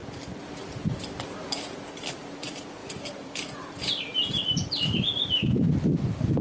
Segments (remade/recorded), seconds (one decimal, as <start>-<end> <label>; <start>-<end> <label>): 0.0-6.4 remade